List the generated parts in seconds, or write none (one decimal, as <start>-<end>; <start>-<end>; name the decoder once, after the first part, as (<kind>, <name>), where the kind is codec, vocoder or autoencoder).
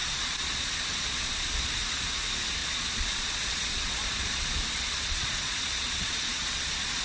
0.0-1.7 (vocoder, Vocos); 2.6-7.0